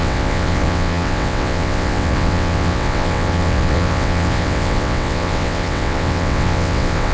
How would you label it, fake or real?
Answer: fake